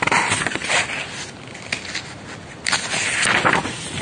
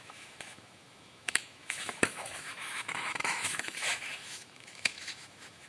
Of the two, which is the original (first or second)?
first